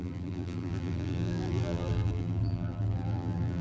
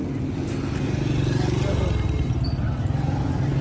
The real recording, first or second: second